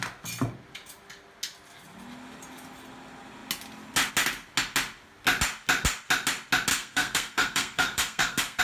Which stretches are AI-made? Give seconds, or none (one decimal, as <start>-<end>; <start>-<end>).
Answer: 6.7-8.6